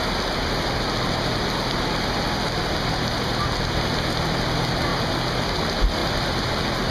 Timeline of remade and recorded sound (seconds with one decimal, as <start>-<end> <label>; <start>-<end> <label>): 0.0-6.0 recorded; 6.0-6.5 remade; 6.5-6.9 recorded